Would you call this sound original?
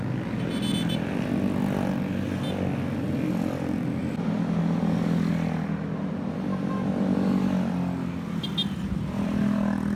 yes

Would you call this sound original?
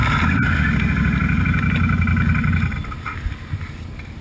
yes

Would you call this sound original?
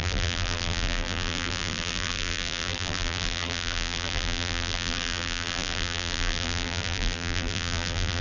no